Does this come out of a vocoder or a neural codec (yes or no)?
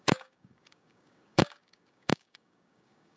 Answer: yes